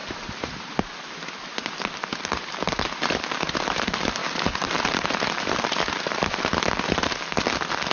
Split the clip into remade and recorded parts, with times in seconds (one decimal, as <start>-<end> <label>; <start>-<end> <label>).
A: 0.0-0.7 remade; 0.7-2.1 recorded; 2.1-3.8 remade; 3.8-4.2 recorded; 4.2-6.3 remade; 6.3-7.9 recorded